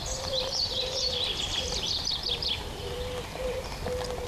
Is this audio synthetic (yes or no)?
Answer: yes